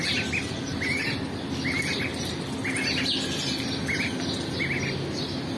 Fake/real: real